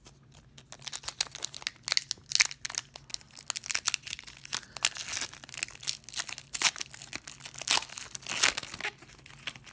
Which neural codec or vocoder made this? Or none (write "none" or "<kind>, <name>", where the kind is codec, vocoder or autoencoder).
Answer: none